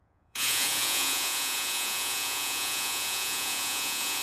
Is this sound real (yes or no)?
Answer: no